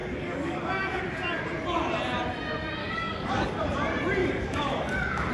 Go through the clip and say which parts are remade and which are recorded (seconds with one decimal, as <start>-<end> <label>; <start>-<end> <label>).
0.0-1.0 remade; 1.0-2.8 recorded; 2.8-3.6 remade; 3.6-4.2 recorded; 4.2-5.3 remade